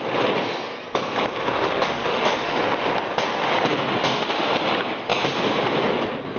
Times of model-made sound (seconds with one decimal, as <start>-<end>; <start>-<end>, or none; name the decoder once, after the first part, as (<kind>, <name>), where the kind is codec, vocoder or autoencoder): 1.4-2.5 (autoencoder, DAC-VAE); 4.0-4.5